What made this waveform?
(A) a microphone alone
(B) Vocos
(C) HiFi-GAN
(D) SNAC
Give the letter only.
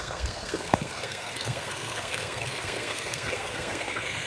D